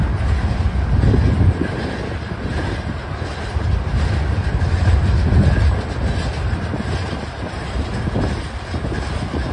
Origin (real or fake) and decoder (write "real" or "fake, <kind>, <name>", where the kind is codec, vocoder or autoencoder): real